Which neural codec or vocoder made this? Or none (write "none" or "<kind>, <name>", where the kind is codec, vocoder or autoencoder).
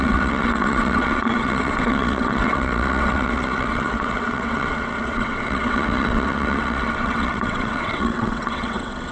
vocoder, WaveNeXt